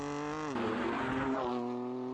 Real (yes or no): yes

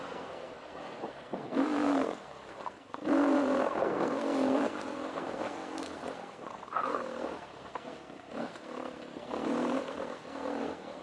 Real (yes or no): no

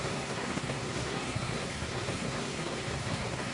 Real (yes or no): no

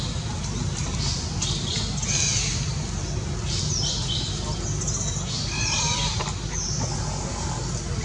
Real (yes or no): yes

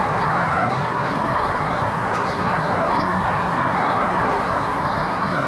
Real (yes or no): no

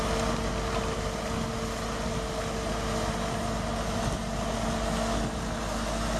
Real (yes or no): yes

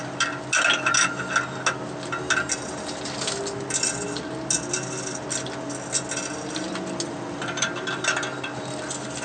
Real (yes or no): yes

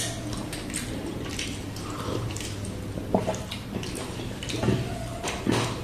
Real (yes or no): yes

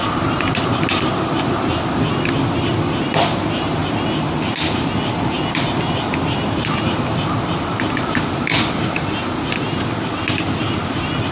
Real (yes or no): yes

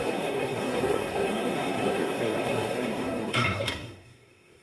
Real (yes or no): no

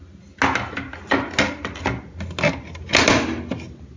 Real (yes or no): yes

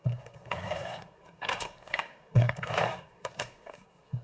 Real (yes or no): no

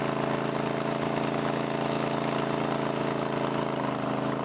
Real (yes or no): yes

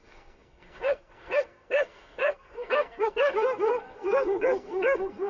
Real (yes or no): no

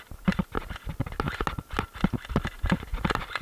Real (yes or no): yes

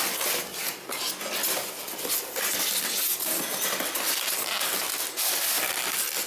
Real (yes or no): yes